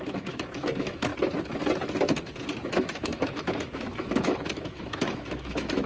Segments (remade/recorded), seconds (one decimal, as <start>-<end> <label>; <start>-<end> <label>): 0.0-1.1 remade; 1.1-2.7 recorded; 2.7-5.9 remade